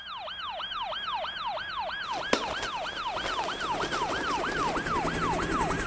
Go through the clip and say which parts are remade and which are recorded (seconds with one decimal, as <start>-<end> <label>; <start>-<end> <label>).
0.0-5.9 recorded